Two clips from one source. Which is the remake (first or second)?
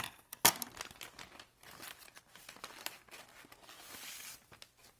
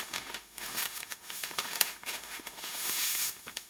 second